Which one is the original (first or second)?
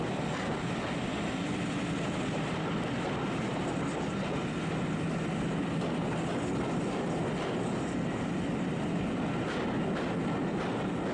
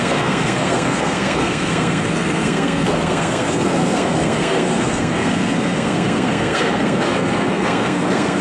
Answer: first